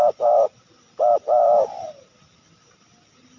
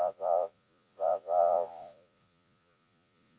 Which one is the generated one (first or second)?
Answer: second